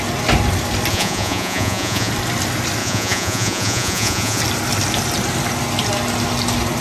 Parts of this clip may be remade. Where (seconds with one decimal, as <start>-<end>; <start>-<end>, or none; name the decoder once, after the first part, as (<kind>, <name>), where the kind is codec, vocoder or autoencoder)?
0.9-2.1 (vocoder, Vocos); 2.8-4.4